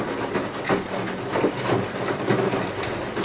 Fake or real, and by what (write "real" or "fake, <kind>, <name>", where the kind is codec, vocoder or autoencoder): real